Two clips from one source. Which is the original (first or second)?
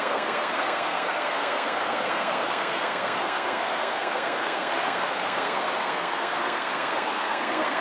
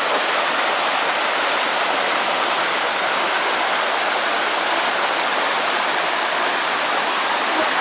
second